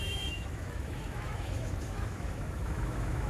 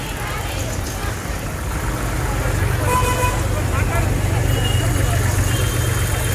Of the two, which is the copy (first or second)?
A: first